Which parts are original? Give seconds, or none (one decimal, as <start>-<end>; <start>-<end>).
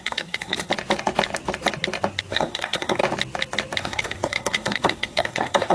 0.7-2.3; 3.0-3.8